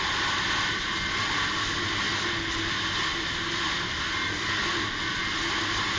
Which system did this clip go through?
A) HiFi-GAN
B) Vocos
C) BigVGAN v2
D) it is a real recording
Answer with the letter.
D